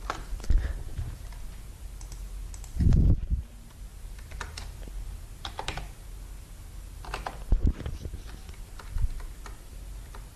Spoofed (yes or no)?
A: no